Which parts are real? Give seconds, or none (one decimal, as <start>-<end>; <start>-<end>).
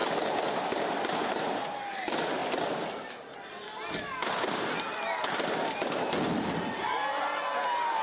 0.0-8.0